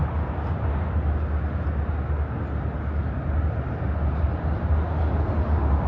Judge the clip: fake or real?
real